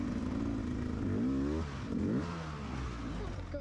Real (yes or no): yes